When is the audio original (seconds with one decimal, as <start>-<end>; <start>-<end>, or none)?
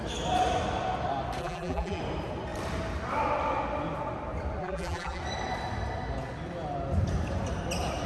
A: 0.0-1.4; 2.0-4.6; 5.2-8.1